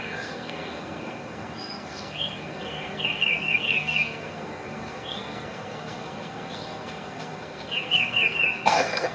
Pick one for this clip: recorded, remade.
remade